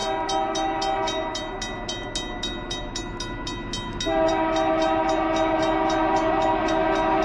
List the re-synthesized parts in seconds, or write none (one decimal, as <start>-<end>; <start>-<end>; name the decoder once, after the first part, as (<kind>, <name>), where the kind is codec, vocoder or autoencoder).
none